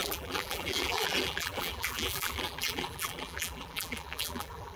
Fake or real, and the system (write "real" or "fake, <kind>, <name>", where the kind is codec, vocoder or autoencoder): fake, vocoder, BigVGAN v2